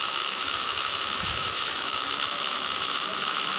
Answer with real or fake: fake